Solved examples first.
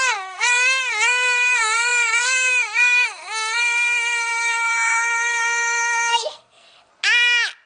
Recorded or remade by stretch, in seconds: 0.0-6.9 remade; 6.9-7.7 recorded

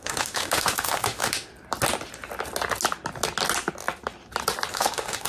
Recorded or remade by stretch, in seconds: 0.0-1.5 remade; 1.5-4.7 recorded; 4.7-5.3 remade

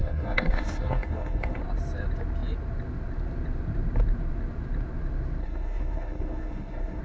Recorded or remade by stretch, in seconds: 0.0-1.6 remade; 1.6-5.4 recorded; 5.4-7.0 remade

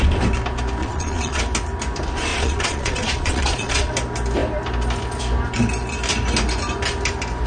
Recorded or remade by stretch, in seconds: 0.0-0.8 recorded; 0.8-1.4 remade; 1.4-2.3 recorded; 2.3-3.9 remade; 3.9-7.5 recorded

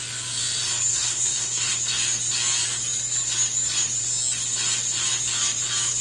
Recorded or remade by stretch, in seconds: 0.0-0.9 recorded; 0.9-1.7 remade; 1.7-6.0 recorded

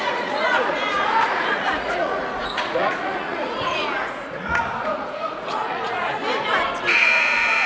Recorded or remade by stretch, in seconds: 0.0-6.2 remade; 6.2-7.0 recorded; 7.0-7.7 remade

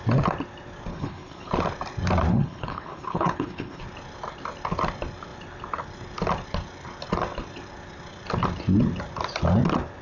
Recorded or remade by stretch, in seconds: 0.0-0.9 recorded; 0.9-1.5 remade; 1.5-2.3 recorded; 2.3-3.8 remade; 3.8-10.0 recorded